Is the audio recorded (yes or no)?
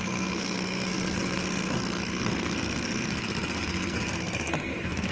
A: no